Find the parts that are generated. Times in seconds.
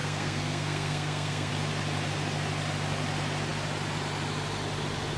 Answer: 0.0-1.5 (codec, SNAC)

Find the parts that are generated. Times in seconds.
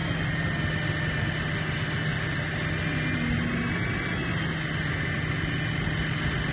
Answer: none